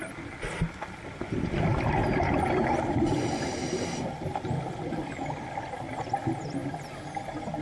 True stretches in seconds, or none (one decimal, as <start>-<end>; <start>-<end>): 0.0-2.0; 5.7-7.6